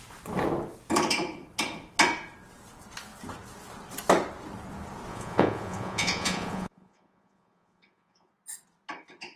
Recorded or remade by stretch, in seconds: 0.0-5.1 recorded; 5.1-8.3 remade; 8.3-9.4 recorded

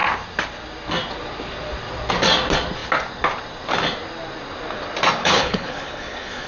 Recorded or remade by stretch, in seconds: 0.0-5.2 recorded; 5.2-6.5 remade

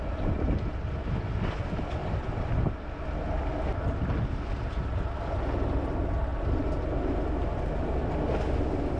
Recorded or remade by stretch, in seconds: 0.0-9.0 recorded